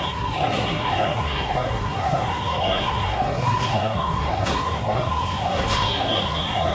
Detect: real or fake fake